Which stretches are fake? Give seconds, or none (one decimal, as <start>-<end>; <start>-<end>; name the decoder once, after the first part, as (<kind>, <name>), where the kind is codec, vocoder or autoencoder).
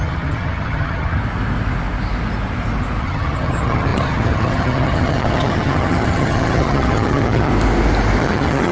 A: 0.0-1.2 (vocoder, HiFi-GAN); 3.0-7.5; 8.2-8.7